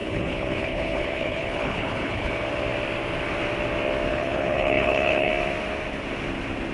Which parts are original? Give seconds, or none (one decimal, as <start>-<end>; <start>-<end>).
2.3-4.1; 5.3-6.7